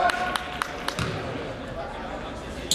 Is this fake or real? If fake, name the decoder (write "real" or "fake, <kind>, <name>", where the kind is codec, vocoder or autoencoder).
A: real